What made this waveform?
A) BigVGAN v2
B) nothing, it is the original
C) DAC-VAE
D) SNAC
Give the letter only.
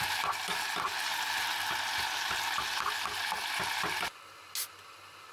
B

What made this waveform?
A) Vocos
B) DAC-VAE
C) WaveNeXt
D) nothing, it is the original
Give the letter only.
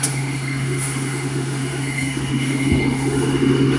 B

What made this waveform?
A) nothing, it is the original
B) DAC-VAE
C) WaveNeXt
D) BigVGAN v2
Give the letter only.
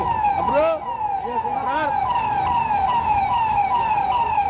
A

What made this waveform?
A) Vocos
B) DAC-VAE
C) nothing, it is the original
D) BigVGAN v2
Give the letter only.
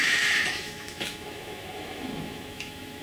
B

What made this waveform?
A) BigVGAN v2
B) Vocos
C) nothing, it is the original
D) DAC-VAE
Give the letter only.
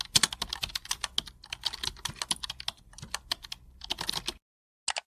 C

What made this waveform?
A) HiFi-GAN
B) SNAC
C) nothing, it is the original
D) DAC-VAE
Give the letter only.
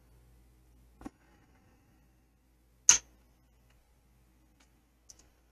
C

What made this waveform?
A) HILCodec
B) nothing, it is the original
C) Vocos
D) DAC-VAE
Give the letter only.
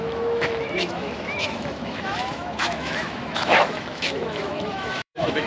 D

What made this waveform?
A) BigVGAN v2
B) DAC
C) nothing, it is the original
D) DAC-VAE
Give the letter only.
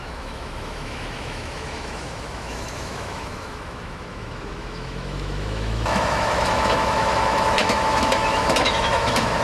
D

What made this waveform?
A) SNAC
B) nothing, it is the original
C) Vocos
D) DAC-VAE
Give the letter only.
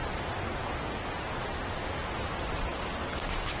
B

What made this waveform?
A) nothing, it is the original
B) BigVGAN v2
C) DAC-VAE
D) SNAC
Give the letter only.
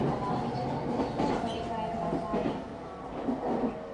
A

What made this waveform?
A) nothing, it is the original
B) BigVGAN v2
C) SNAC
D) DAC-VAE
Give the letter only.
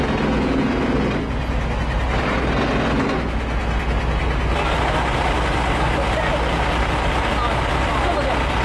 A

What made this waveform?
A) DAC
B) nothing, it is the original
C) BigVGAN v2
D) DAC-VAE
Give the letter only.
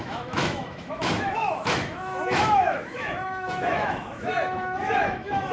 D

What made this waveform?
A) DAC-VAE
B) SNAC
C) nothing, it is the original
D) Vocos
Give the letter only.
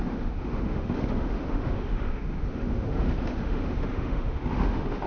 A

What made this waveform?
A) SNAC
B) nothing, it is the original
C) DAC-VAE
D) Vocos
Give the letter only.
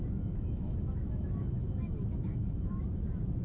C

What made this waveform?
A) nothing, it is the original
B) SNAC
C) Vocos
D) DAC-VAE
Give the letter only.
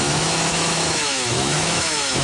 D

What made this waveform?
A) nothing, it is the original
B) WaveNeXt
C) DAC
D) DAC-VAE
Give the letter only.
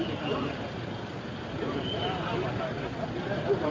A